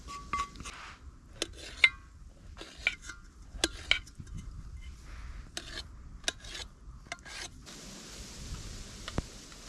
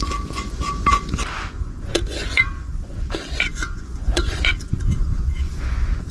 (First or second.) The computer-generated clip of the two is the second